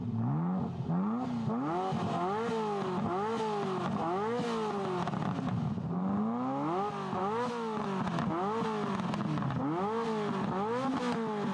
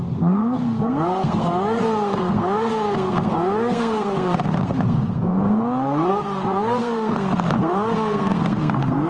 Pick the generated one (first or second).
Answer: second